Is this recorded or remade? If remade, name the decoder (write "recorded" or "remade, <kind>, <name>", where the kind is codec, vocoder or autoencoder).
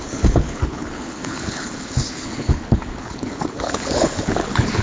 remade, codec, HILCodec